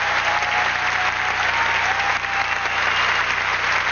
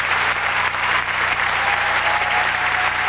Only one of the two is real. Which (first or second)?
first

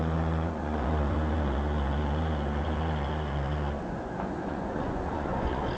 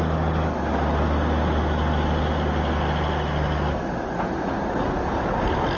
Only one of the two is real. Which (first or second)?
second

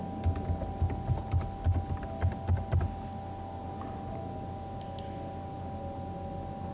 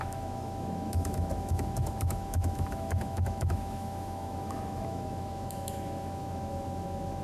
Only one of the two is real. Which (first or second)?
first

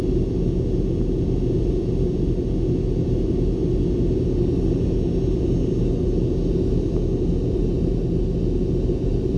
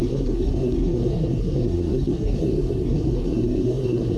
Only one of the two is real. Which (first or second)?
first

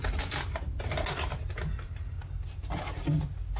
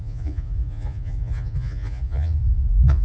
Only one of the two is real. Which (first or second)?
first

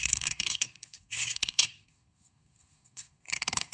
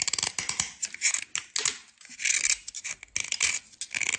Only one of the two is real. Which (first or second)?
second